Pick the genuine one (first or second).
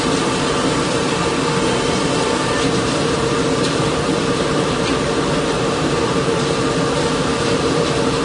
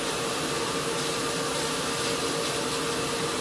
second